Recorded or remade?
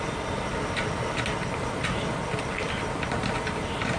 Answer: recorded